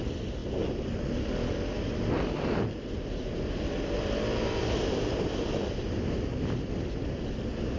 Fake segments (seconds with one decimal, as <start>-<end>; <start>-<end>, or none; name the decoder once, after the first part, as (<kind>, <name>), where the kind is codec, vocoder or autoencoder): none